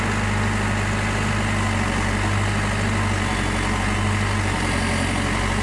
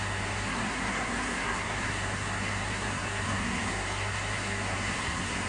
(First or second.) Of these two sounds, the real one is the first